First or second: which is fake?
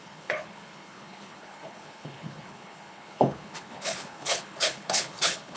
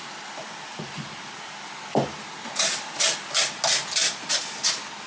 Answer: first